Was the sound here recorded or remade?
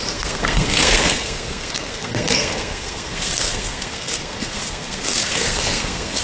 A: remade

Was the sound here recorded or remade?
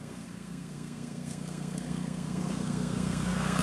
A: remade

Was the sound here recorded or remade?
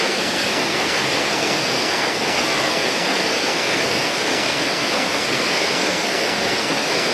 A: remade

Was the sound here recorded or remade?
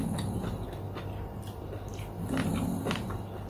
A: recorded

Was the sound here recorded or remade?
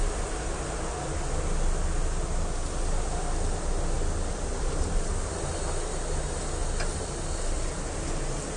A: recorded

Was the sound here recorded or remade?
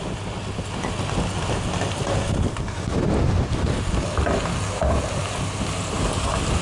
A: recorded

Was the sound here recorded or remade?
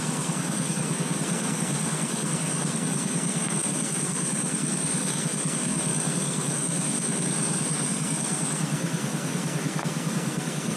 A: remade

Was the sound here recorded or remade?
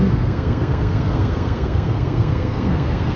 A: remade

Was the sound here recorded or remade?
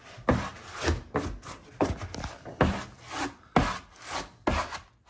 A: recorded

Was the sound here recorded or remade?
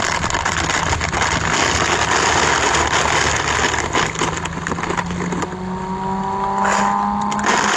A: recorded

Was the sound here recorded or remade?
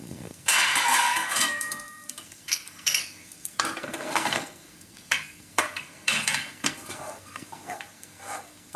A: remade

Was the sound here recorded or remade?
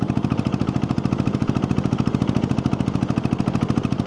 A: recorded